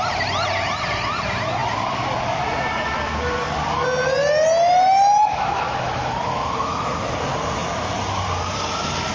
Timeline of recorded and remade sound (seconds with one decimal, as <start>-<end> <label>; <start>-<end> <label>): 0.0-5.3 recorded; 5.3-6.8 remade; 6.8-9.1 recorded